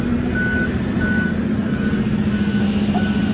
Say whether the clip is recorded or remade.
recorded